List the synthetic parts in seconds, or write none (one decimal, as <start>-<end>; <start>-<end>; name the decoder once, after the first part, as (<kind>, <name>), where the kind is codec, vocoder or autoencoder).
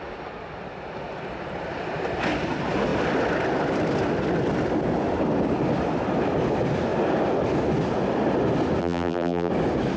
8.8-9.5 (vocoder, BigVGAN v2)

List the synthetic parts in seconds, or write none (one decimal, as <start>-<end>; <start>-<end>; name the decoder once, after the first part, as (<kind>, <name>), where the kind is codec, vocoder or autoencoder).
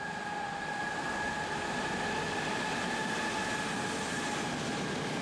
none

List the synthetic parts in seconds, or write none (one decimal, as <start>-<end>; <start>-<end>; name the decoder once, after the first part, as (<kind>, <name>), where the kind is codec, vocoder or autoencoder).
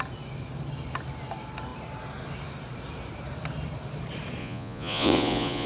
4.4-5.7 (vocoder, Vocos)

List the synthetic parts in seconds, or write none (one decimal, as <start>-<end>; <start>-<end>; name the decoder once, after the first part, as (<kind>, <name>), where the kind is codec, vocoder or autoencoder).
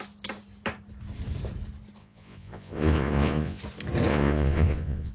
2.0-3.6 (vocoder, Vocos); 4.1-5.1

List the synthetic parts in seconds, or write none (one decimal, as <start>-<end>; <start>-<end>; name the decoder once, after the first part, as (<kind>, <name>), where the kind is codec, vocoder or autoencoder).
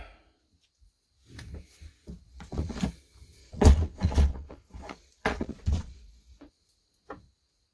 2.3-2.8 (vocoder, Vocos); 3.4-6.5